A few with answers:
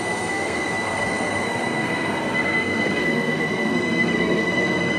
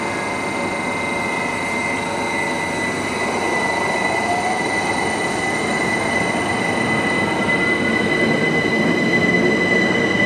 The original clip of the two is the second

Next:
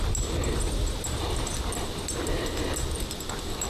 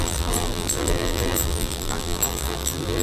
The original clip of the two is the first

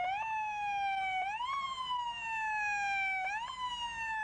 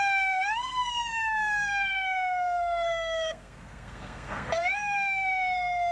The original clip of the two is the first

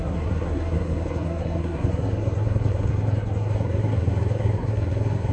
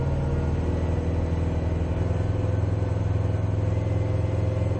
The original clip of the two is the second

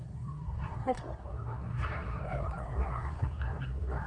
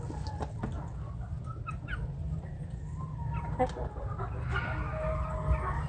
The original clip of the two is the second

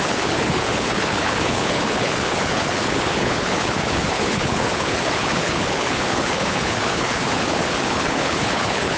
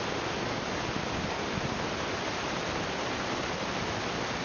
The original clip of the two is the second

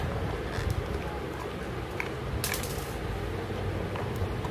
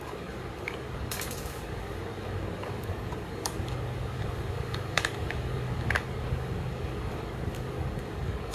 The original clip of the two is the first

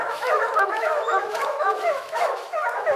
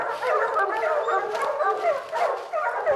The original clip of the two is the second